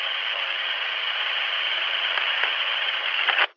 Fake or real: fake